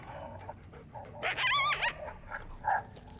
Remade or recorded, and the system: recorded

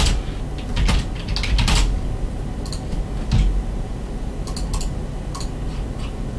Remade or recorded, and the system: recorded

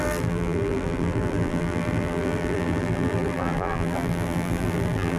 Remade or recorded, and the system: remade, vocoder, BigVGAN v2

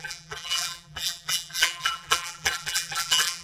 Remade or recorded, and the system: remade, vocoder, BigVGAN v2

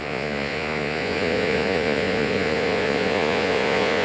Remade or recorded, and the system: remade, vocoder, Vocos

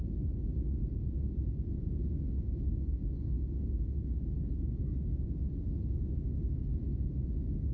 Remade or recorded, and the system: recorded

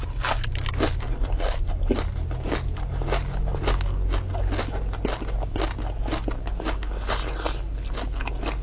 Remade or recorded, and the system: recorded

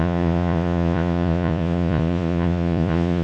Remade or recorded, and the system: remade, vocoder, Vocos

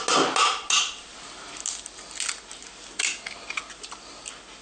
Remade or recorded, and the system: recorded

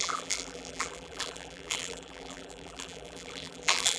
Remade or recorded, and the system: remade, vocoder, BigVGAN v2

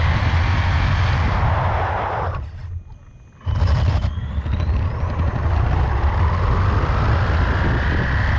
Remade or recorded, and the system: recorded